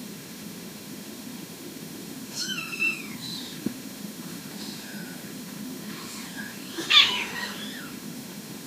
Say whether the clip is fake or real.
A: fake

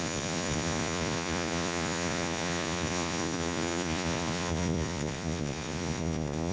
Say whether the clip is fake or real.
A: fake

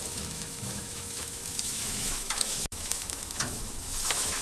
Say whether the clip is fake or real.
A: fake